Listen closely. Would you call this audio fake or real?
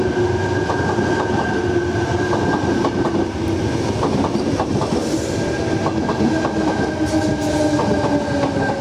real